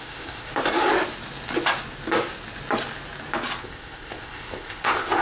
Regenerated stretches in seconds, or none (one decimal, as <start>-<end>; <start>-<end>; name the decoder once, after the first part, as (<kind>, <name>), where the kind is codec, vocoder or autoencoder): 0.0-0.5 (codec, ZipCodec); 3.6-5.2